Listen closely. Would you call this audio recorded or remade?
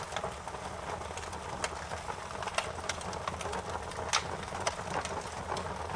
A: recorded